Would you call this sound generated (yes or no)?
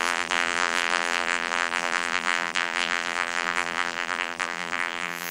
yes